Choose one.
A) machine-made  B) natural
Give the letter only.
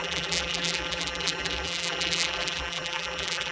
A